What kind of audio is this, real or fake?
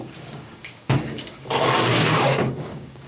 fake